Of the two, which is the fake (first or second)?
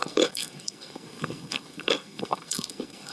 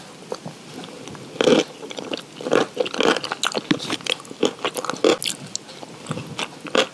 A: first